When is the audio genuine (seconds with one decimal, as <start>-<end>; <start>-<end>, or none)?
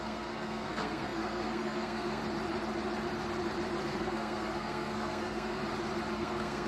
2.2-3.8; 5.6-6.1